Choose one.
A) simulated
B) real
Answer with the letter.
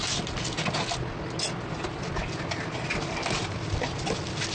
B